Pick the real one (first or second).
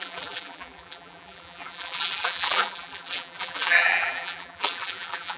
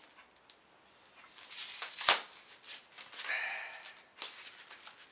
second